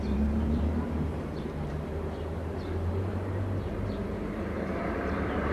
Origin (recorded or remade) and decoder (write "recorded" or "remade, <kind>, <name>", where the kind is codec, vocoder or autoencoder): remade, vocoder, BigVGAN v2